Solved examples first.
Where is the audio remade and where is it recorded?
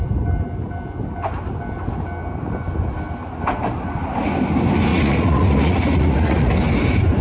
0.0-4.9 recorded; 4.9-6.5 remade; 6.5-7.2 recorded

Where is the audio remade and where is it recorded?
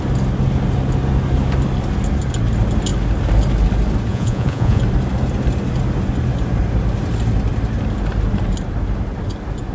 0.0-4.1 recorded; 4.1-4.8 remade; 4.8-9.7 recorded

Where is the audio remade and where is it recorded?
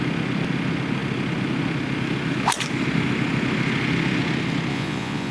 0.0-4.7 recorded; 4.7-5.3 remade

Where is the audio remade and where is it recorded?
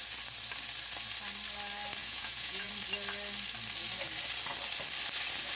0.0-2.0 recorded; 2.0-2.7 remade; 2.7-5.5 recorded